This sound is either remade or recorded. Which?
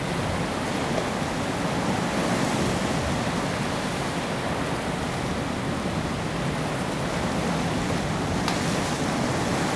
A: recorded